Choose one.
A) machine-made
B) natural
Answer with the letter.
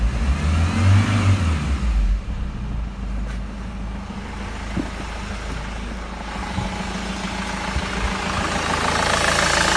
B